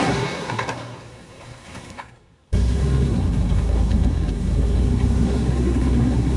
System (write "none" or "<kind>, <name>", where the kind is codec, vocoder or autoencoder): codec, SNAC